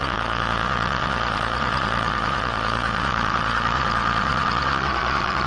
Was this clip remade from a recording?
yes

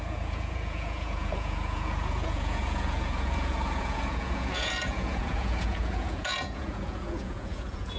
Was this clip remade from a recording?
yes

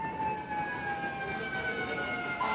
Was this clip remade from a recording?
no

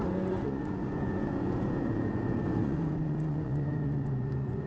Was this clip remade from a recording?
yes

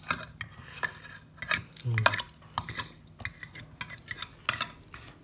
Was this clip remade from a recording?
no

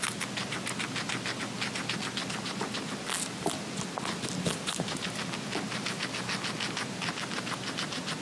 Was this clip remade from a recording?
no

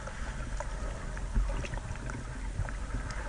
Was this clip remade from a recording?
no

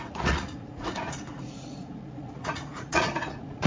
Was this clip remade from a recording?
yes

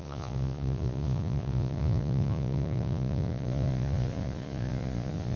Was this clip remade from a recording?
yes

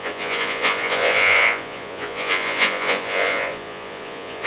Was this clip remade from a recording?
yes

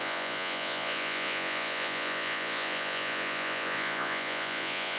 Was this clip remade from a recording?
yes